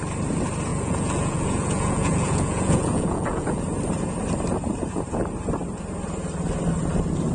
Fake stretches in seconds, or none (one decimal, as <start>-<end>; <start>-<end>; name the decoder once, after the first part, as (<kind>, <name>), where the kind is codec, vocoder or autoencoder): 0.7-3.6 (vocoder, Vocos)